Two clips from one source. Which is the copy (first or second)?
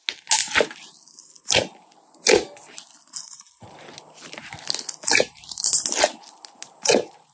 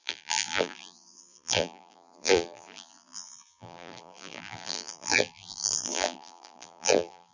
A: second